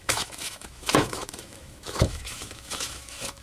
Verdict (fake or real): fake